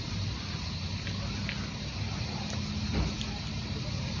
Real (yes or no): yes